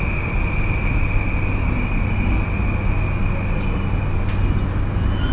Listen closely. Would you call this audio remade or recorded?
recorded